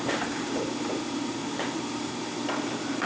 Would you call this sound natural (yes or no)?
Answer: no